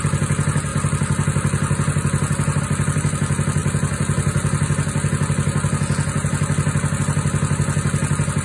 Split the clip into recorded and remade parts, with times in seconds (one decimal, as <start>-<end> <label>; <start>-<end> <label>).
0.0-8.4 recorded